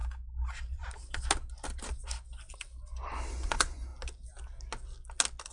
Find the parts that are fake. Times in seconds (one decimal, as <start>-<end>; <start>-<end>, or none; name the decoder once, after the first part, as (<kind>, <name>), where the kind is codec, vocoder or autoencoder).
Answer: 3.3-3.9 (vocoder, Vocos)